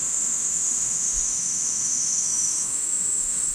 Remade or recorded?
remade